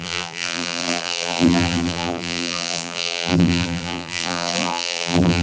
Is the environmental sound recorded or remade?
remade